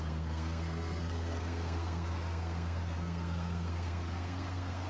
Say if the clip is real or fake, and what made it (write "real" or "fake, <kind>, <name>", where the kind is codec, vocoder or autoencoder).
fake, codec, SNAC